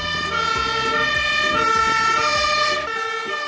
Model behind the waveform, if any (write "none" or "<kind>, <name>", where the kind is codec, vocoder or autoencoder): none